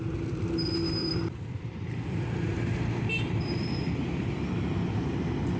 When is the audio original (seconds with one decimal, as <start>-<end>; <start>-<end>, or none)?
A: 0.0-1.0; 4.4-5.6